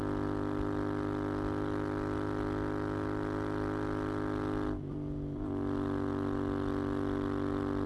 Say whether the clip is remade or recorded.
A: recorded